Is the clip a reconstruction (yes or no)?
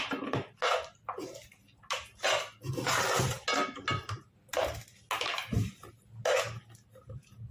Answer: no